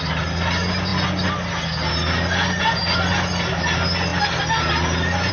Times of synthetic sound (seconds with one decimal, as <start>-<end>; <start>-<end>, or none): none